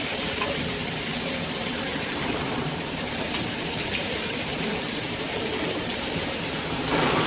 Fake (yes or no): yes